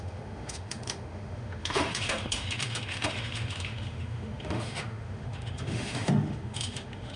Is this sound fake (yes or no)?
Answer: yes